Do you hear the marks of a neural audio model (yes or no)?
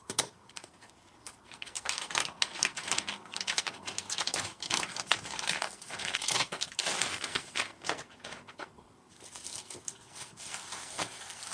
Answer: yes